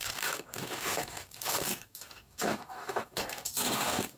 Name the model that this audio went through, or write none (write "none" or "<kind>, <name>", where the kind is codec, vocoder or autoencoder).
codec, DAC